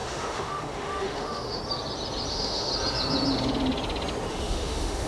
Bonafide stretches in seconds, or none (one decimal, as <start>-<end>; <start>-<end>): 1.6-2.3; 2.7-4.3

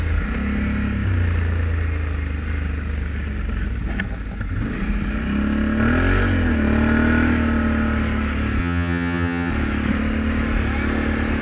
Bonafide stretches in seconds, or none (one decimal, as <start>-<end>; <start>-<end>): 0.0-8.6; 9.5-11.4

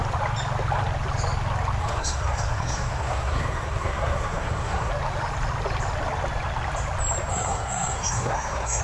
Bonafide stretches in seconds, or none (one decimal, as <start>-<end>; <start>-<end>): 0.0-1.8; 4.9-7.3

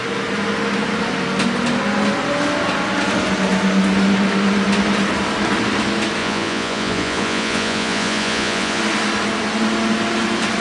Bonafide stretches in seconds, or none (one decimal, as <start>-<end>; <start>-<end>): 0.0-6.2; 8.8-10.6

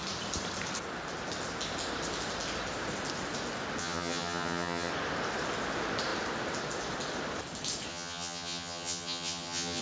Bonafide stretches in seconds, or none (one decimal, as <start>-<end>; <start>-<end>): 0.0-3.8; 4.9-7.9